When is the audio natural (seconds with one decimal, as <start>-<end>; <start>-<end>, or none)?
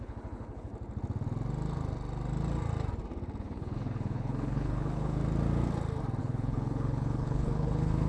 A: 0.7-3.4; 5.2-6.2